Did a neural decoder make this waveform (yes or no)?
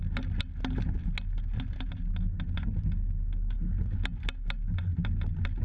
no